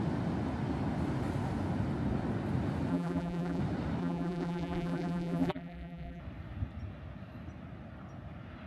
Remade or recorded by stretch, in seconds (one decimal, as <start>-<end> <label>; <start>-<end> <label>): 0.0-2.9 recorded; 2.9-3.6 remade; 3.6-4.0 recorded; 4.0-6.2 remade; 6.2-8.7 recorded